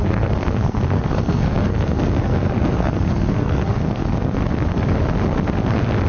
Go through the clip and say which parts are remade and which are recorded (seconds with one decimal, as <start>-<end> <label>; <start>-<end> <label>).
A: 0.0-4.4 remade; 4.4-6.1 recorded